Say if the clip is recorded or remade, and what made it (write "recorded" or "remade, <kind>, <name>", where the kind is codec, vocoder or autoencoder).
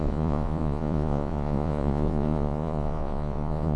remade, vocoder, Vocos